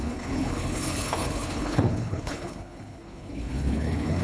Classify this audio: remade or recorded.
remade